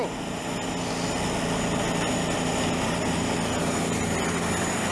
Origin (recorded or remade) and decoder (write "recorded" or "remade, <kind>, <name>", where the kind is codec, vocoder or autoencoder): recorded